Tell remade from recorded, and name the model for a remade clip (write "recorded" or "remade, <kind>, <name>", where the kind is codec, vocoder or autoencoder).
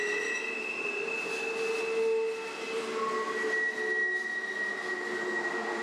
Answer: recorded